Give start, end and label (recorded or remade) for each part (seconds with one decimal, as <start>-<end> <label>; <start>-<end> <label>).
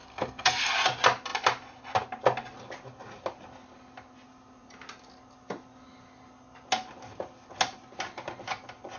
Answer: 0.0-0.7 remade; 0.7-9.0 recorded